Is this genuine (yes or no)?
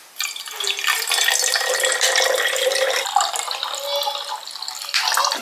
yes